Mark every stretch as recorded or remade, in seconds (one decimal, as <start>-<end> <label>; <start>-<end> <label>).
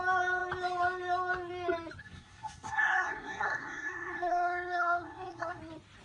0.0-2.0 recorded; 2.0-5.6 remade; 5.6-6.0 recorded